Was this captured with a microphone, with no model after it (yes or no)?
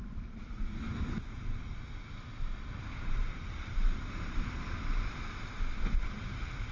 yes